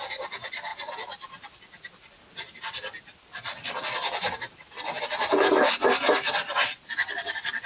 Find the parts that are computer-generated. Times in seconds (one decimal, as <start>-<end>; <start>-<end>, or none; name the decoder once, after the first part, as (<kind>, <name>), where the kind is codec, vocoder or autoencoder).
none